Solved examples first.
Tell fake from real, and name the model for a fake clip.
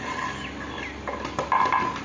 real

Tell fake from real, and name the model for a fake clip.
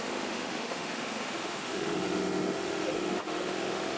fake, autoencoder, DAC-VAE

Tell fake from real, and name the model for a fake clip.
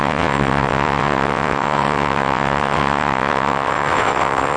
fake, vocoder, WaveNeXt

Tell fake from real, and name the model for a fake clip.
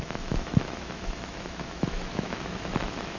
fake, autoencoder, DAC-VAE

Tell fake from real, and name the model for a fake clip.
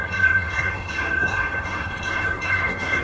fake, codec, SNAC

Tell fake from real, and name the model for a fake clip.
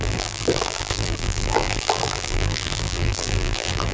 fake, vocoder, BigVGAN v2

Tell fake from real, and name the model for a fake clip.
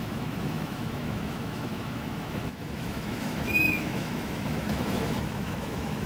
fake, autoencoder, DAC-VAE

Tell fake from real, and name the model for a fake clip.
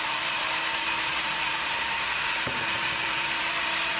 fake, vocoder, BigVGAN v2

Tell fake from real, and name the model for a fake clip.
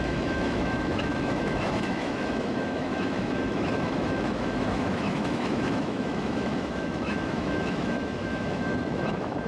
fake, autoencoder, DAC-VAE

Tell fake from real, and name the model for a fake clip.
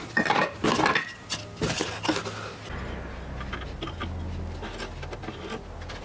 real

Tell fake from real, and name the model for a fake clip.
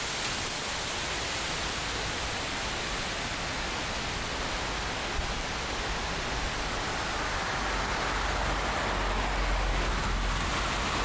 real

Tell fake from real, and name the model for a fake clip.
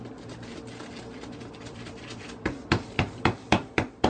fake, vocoder, BigVGAN v2